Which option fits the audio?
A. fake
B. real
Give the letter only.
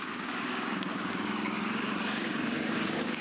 A